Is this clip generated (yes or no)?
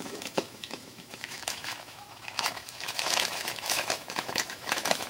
yes